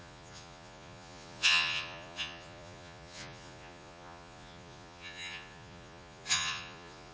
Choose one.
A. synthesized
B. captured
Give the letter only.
A